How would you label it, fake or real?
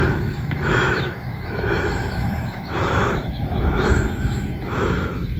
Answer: fake